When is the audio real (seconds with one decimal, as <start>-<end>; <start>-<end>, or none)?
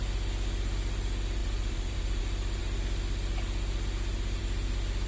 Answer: 0.0-1.4; 2.2-5.1